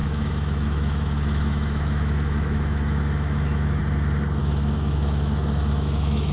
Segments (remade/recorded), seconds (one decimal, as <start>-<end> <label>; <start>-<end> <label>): 0.0-3.8 remade; 3.8-4.4 recorded; 4.4-6.3 remade